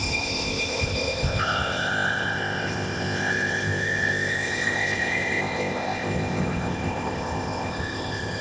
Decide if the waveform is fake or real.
fake